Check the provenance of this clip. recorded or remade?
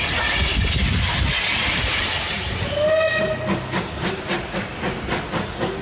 recorded